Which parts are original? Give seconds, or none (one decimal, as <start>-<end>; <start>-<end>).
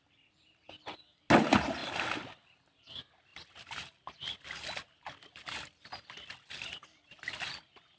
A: 0.0-8.0